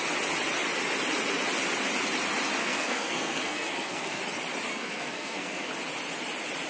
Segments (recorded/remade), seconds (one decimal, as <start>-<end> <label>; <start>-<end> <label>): 0.0-2.6 recorded; 2.6-4.2 remade; 4.2-4.7 recorded; 4.7-5.7 remade; 5.7-6.7 recorded